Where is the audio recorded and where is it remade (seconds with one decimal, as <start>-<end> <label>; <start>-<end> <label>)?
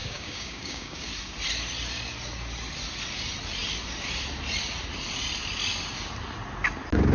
0.0-1.1 remade; 1.1-7.1 recorded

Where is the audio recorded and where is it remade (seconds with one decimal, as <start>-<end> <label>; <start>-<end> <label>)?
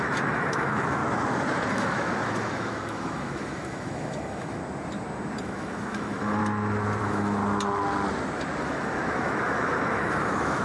0.0-1.0 remade; 1.0-1.7 recorded; 1.7-4.6 remade; 4.6-5.4 recorded; 5.4-6.4 remade; 6.4-7.0 recorded; 7.0-7.4 remade; 7.4-8.6 recorded; 8.6-10.6 remade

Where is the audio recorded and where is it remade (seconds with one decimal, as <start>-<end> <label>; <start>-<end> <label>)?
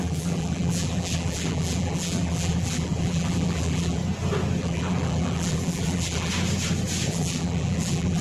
0.0-4.0 remade; 4.0-4.6 recorded; 4.6-6.3 remade; 6.3-7.1 recorded; 7.1-8.2 remade